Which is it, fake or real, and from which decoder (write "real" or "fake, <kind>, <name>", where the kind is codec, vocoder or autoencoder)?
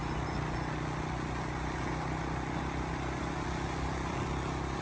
real